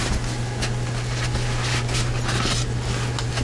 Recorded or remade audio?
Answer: recorded